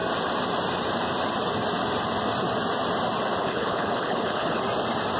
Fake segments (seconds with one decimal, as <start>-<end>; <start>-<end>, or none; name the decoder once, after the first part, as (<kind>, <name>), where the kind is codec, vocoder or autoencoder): 3.4-4.6 (codec, HILCodec)